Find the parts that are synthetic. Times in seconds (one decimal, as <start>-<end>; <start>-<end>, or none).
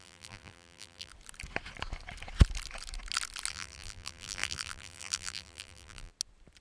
0.0-1.1; 3.5-6.1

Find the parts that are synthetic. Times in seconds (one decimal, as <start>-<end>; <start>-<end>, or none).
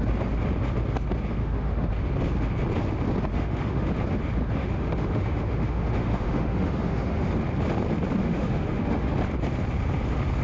1.4-1.9; 3.3-3.9; 4.6-7.3; 8.2-9.1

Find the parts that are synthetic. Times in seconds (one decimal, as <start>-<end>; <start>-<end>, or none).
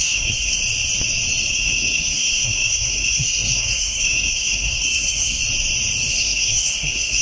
0.0-0.6; 1.5-5.4; 6.1-7.2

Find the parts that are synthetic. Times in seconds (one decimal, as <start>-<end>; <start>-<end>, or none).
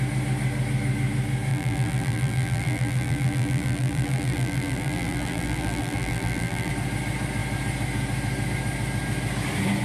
1.5-6.7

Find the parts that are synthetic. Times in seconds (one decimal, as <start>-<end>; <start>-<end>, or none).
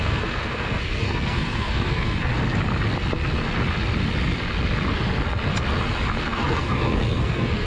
0.0-2.3; 6.2-7.7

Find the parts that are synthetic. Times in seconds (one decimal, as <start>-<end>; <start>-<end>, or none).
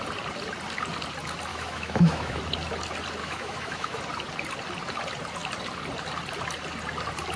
1.5-2.4; 3.2-4.0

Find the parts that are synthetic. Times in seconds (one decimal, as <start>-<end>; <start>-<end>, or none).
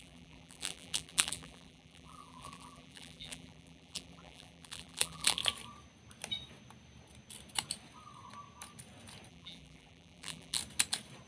0.0-5.4; 9.3-10.6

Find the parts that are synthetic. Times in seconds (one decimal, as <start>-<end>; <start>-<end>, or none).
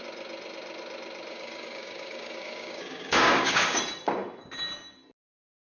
1.3-3.8